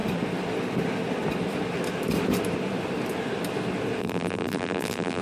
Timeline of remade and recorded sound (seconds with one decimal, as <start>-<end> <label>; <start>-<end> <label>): 0.0-4.0 recorded; 4.0-5.2 remade